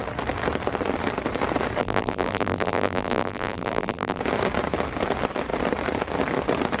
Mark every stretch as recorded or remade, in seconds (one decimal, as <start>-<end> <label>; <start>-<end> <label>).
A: 0.0-1.8 recorded; 1.8-4.2 remade; 4.2-6.8 recorded